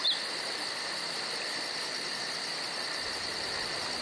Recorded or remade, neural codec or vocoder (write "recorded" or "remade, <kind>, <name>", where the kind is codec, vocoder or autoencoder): recorded